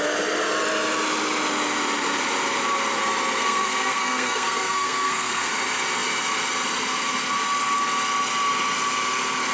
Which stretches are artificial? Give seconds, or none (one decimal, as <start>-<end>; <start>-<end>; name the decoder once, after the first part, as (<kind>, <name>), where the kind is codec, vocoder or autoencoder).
3.4-5.5 (codec, SNAC)